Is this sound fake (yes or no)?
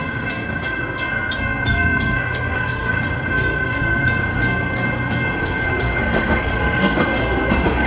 yes